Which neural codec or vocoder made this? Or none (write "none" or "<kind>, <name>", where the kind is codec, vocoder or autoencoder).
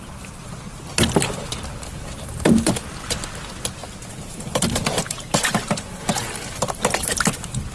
none